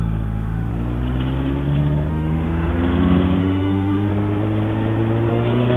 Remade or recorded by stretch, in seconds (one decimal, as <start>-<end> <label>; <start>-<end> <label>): 0.0-0.7 remade; 0.7-2.1 recorded; 2.1-2.7 remade; 2.7-3.4 recorded; 3.4-4.1 remade; 4.1-5.3 recorded; 5.3-5.8 remade